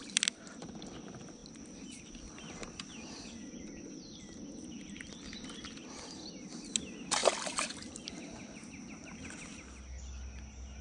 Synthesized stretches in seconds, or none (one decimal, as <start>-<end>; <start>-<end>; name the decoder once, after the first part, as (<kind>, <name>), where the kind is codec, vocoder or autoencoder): 7.2-8.0 (vocoder, BigVGAN v2)